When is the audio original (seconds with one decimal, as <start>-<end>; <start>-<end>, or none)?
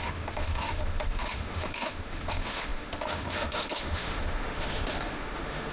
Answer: none